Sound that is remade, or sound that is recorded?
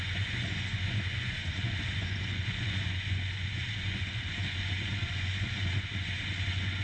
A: remade